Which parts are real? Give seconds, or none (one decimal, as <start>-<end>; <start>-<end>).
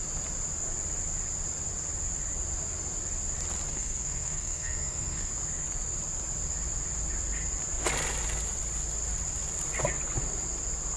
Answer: 0.0-3.7; 5.3-11.0